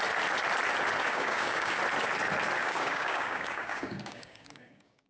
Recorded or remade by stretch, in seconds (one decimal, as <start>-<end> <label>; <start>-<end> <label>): 0.0-1.0 recorded; 1.0-1.8 remade; 1.8-2.6 recorded; 2.6-5.1 remade